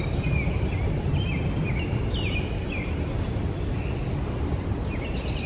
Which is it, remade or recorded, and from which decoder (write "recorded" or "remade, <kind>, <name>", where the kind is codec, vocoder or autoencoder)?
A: recorded